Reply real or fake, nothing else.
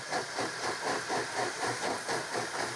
fake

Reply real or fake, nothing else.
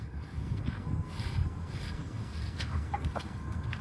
fake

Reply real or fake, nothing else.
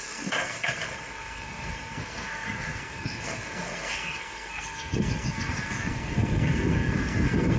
fake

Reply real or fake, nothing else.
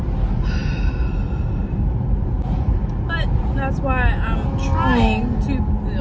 real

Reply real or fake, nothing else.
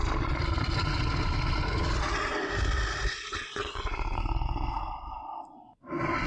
real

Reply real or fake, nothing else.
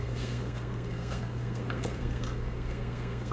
fake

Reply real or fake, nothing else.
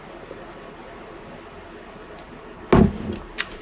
real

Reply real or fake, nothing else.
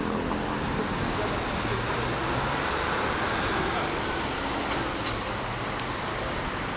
real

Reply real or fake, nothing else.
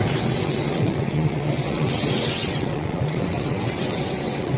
fake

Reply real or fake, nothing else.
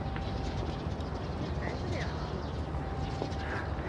real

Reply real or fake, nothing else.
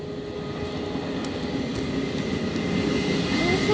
real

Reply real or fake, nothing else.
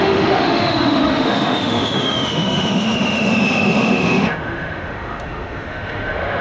fake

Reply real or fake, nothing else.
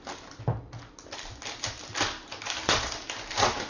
real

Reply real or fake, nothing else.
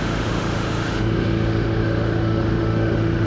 fake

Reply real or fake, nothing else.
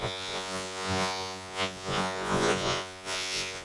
fake